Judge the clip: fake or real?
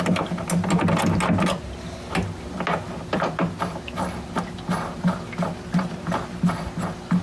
real